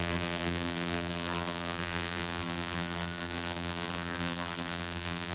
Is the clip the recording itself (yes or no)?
no